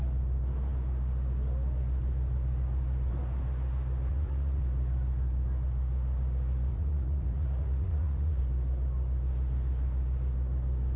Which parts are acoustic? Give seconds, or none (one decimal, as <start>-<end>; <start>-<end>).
0.0-4.1; 4.6-6.7; 8.4-11.0